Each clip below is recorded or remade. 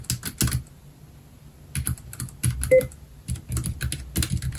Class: recorded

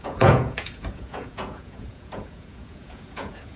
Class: remade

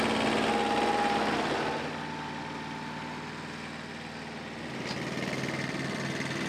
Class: recorded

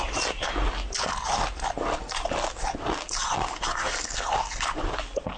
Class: recorded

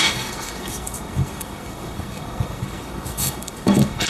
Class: remade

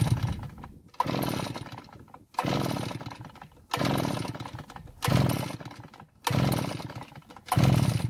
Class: recorded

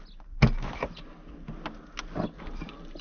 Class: recorded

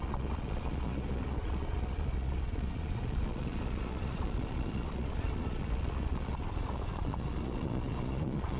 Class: remade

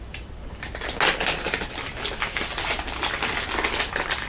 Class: recorded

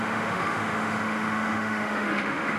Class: remade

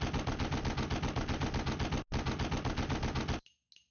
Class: recorded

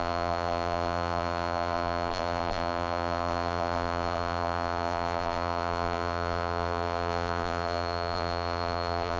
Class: remade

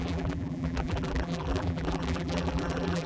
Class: remade